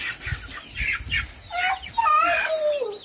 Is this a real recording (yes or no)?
yes